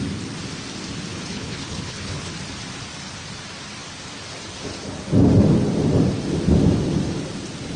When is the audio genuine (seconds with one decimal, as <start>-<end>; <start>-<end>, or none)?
0.0-1.1; 2.3-7.8